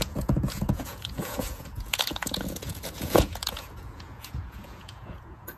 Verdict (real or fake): fake